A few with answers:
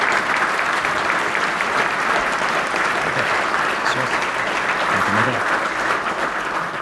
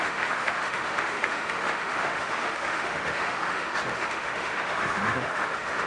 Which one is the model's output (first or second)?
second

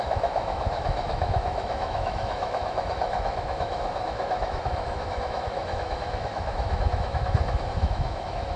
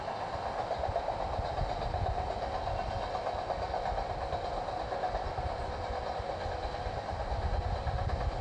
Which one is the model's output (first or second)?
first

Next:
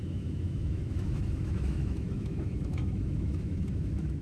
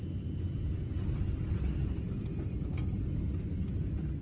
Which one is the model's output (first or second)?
first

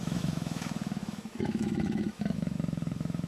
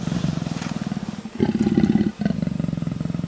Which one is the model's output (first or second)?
first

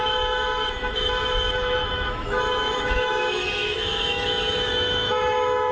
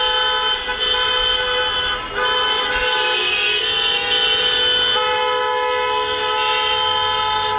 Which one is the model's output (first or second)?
first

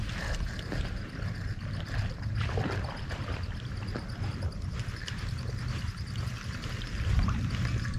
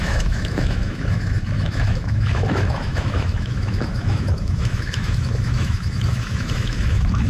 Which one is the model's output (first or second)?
second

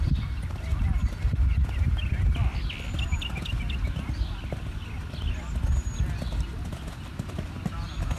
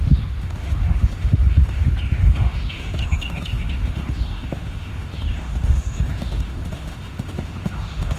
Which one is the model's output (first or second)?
second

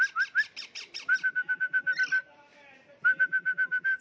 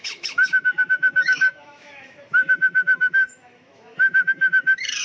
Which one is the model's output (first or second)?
second